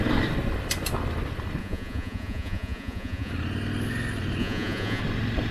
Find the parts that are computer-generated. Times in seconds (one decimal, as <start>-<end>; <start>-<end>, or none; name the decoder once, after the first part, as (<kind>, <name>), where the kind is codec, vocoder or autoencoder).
1.6-3.3 (vocoder, Vocos); 4.4-5.0